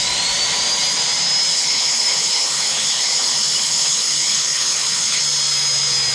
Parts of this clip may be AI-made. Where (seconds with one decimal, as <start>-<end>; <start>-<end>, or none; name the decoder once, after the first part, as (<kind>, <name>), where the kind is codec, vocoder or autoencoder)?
1.5-5.2 (codec, HILCodec)